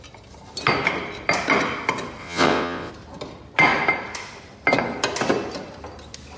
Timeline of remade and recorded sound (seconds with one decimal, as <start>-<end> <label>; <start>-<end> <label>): 0.0-2.2 recorded; 2.2-2.9 remade; 2.9-6.4 recorded